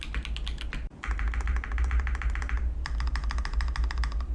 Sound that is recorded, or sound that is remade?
recorded